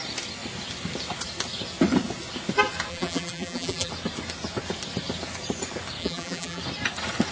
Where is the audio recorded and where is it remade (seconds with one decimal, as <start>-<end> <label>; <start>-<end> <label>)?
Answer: 0.0-2.9 recorded; 2.9-3.9 remade; 3.9-6.0 recorded; 6.0-6.6 remade; 6.6-7.3 recorded